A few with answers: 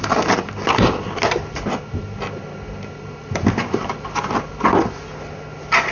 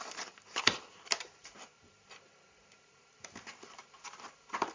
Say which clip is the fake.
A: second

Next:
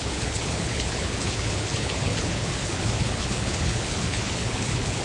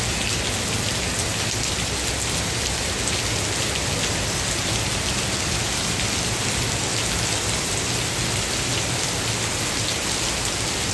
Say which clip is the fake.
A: first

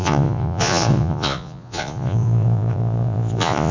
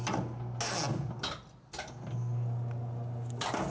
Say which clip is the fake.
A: first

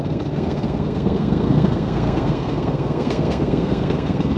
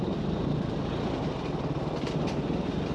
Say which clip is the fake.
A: first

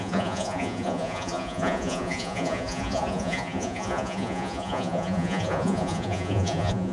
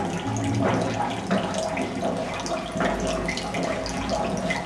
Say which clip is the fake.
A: first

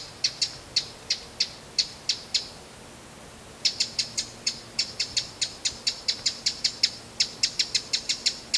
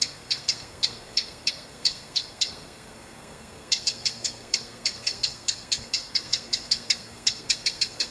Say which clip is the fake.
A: second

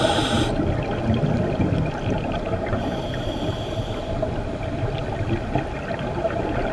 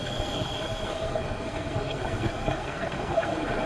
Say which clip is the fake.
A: second